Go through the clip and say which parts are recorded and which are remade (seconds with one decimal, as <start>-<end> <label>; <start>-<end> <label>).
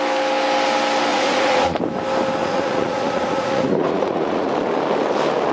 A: 0.0-1.1 recorded; 1.1-1.8 remade; 1.8-2.4 recorded; 2.4-4.5 remade; 4.5-5.5 recorded